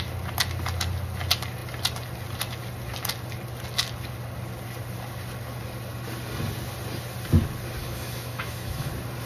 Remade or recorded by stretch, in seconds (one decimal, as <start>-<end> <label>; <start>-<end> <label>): 0.0-7.8 recorded; 7.8-8.9 remade; 8.9-9.3 recorded